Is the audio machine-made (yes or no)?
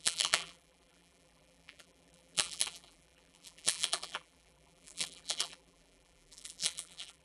yes